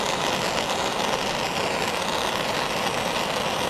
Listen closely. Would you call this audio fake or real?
real